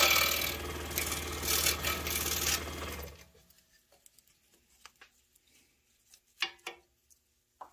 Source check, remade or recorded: recorded